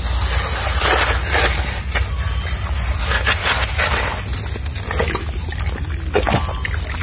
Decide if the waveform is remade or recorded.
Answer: recorded